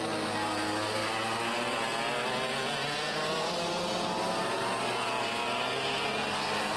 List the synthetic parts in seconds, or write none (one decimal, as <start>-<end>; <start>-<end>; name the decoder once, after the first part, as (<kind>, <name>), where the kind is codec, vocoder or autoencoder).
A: none